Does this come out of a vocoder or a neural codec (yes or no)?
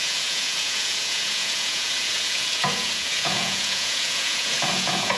yes